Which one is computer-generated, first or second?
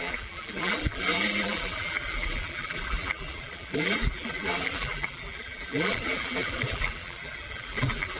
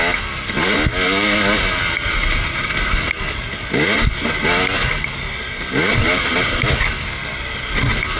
first